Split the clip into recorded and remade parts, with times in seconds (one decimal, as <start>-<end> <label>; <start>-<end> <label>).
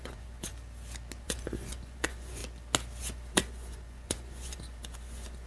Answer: 0.0-0.5 remade; 0.5-1.2 recorded; 1.2-2.4 remade; 2.4-3.0 recorded; 3.0-5.5 remade